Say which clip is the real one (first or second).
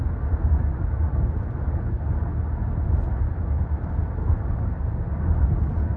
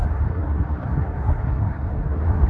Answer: first